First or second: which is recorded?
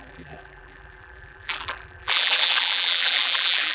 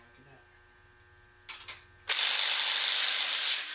second